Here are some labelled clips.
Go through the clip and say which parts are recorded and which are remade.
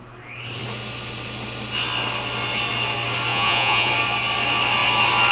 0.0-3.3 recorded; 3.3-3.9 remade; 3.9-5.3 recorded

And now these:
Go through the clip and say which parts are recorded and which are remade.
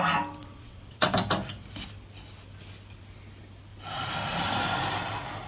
0.0-0.4 recorded; 0.4-1.1 remade; 1.1-5.5 recorded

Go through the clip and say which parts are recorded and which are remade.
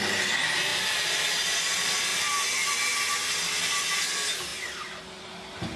0.0-0.7 recorded; 0.7-1.3 remade; 1.3-2.1 recorded; 2.1-3.1 remade; 3.1-4.5 recorded; 4.5-5.3 remade; 5.3-5.8 recorded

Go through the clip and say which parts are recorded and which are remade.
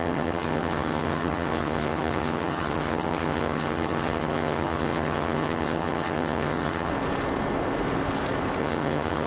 0.0-6.9 remade; 6.9-8.6 recorded; 8.6-9.3 remade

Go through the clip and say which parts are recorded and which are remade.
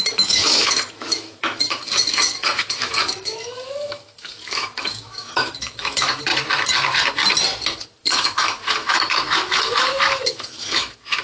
0.0-6.3 remade; 6.3-8.0 recorded; 8.0-11.2 remade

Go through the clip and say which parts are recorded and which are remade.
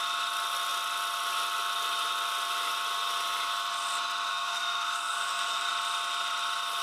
0.0-4.3 recorded; 4.3-5.7 remade; 5.7-6.8 recorded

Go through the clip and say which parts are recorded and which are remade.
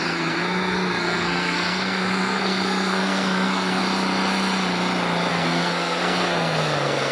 0.0-3.8 remade; 3.8-5.3 recorded; 5.3-7.1 remade